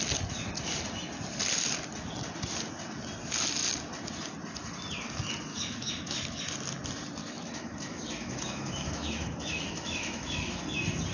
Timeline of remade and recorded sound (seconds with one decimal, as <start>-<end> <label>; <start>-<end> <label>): 0.0-5.5 recorded; 5.5-6.4 remade; 6.4-7.2 recorded; 7.2-10.6 remade; 10.6-11.1 recorded